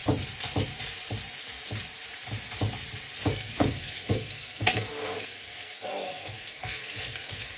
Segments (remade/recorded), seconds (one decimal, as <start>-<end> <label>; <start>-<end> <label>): 0.0-3.3 recorded; 3.3-7.6 remade